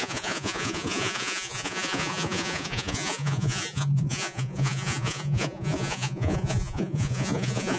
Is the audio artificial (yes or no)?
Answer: yes